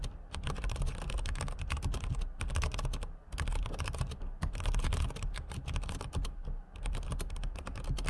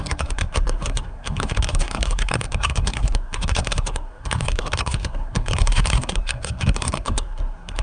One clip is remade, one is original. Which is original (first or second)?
first